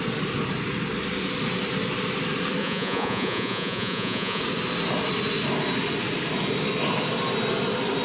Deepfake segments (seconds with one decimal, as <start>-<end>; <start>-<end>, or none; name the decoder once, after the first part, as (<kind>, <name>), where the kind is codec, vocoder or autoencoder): 2.6-4.4 (vocoder, Vocos)